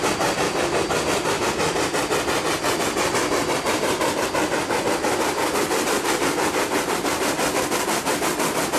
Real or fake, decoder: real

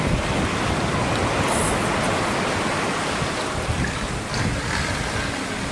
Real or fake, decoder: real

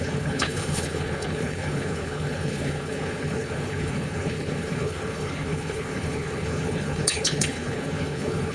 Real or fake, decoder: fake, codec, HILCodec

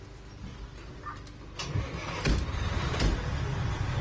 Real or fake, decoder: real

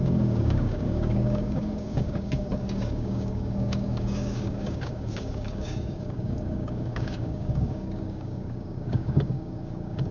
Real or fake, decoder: fake, codec, DAC